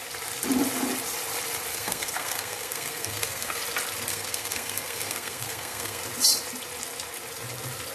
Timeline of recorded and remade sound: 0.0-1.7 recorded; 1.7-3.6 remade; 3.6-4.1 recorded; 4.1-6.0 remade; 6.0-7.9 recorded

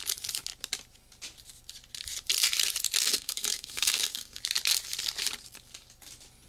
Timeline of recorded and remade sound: 0.0-3.0 recorded; 3.0-4.4 remade; 4.4-6.5 recorded

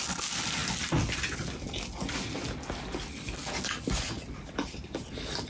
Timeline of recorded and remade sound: 0.0-5.5 recorded

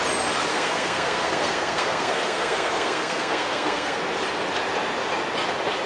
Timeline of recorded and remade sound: 0.0-0.5 recorded; 0.5-4.0 remade; 4.0-5.9 recorded

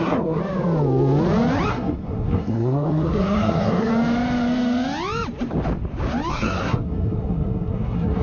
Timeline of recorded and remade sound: 0.0-0.4 remade; 0.4-1.7 recorded; 1.7-3.9 remade; 3.9-6.3 recorded; 6.3-8.2 remade